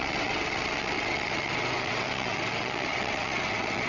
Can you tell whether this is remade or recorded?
remade